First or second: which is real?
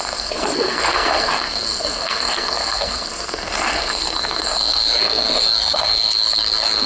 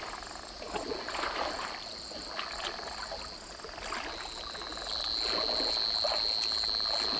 second